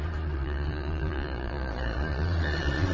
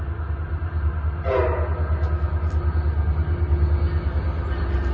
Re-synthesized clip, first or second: first